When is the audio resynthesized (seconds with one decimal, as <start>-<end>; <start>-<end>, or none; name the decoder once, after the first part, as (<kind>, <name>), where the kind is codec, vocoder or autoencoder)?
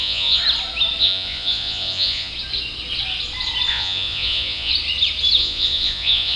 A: 0.0-0.4 (vocoder, Vocos); 1.0-2.3; 3.7-4.7; 5.4-6.4